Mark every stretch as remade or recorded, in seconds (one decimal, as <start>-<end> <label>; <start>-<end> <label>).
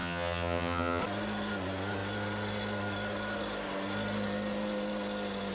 0.0-1.0 remade; 1.0-5.5 recorded